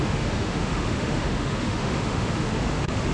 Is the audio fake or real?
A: fake